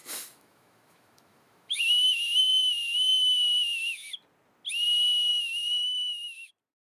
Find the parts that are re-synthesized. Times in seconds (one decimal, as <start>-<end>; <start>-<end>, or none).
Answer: 0.0-1.8; 5.3-6.5